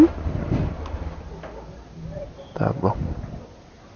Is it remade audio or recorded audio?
recorded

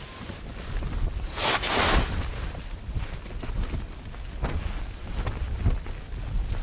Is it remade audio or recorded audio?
recorded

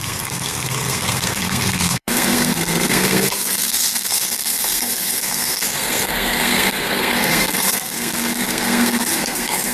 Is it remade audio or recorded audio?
remade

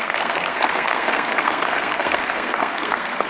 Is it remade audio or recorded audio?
remade